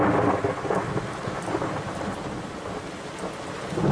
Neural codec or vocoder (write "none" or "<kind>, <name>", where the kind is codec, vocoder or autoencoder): none